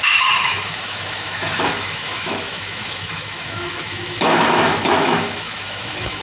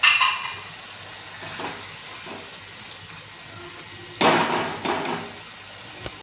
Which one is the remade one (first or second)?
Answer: first